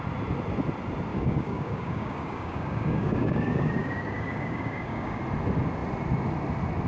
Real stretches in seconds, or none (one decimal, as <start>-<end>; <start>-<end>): 0.0-1.1; 5.2-6.9